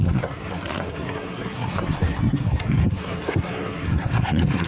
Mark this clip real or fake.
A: fake